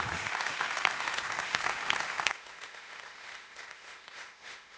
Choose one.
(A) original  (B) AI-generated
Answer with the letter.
B